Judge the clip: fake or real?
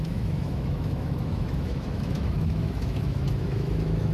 fake